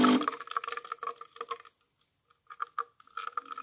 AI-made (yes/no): no